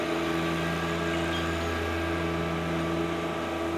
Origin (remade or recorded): recorded